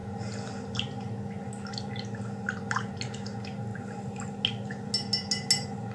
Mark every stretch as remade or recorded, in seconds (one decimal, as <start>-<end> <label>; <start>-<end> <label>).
0.0-3.7 recorded; 3.7-4.2 remade; 4.2-5.9 recorded